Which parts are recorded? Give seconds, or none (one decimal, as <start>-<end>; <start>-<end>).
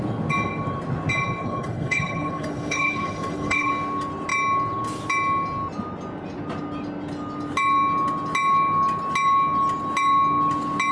0.0-1.4; 3.7-10.9